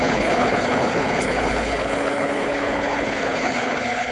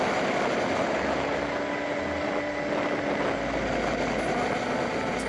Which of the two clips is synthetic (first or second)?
first